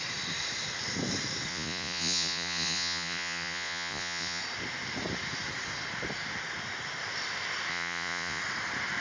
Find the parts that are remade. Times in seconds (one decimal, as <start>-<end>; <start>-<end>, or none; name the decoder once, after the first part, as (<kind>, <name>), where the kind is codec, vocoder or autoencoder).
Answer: 1.5-4.4 (vocoder, Vocos); 7.7-8.4